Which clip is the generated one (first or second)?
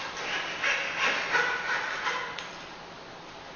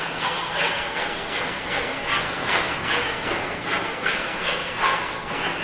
second